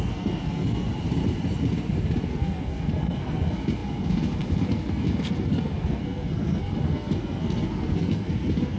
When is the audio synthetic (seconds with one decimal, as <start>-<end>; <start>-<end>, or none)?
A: 0.0-0.9; 2.3-8.8